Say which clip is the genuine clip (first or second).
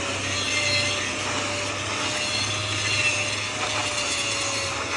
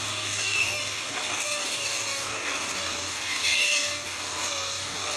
first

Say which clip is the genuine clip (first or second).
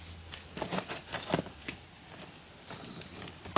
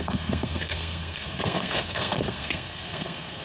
first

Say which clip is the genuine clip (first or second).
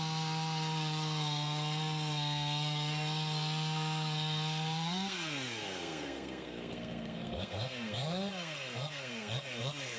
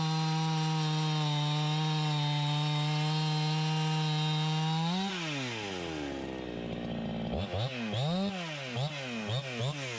second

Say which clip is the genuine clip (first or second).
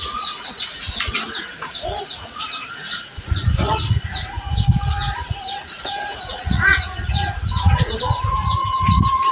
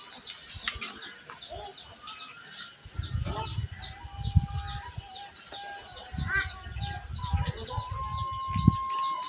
second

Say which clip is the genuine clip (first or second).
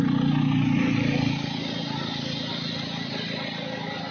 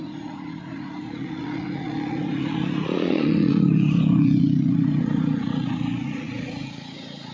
first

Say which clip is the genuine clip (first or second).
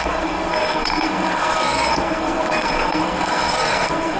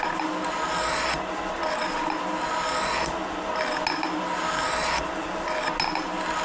second